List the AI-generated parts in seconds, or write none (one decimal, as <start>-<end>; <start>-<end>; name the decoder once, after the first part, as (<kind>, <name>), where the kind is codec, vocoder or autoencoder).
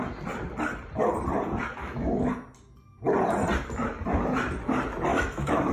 1.8-2.3 (autoencoder, DAC-VAE); 5.1-5.7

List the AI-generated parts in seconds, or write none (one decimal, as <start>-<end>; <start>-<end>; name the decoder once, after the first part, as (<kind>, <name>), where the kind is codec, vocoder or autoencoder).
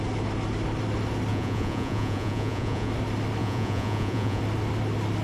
1.3-2.9 (vocoder, Vocos); 3.4-4.4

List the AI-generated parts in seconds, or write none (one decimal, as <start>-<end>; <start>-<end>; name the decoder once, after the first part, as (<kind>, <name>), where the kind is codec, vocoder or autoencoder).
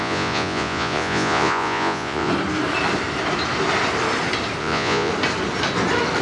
0.0-2.3 (vocoder, Vocos); 4.6-5.1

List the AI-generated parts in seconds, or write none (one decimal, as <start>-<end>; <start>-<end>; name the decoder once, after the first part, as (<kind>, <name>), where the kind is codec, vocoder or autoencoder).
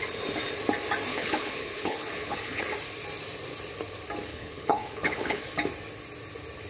1.1-2.6 (codec, HILCodec); 4.3-5.4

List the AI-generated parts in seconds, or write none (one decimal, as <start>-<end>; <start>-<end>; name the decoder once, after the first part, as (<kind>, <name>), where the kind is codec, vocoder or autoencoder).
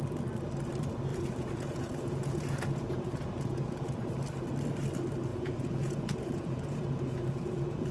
1.1-4.1 (vocoder, Vocos); 5.3-7.9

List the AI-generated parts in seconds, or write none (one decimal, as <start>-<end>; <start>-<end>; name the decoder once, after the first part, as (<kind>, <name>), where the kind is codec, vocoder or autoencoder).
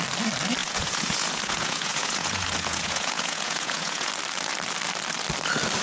0.6-4.1 (vocoder, Vocos)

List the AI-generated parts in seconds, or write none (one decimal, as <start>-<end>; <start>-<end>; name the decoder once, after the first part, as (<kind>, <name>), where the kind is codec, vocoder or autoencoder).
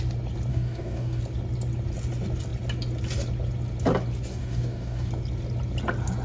0.5-1.2 (codec, DAC); 4.3-5.1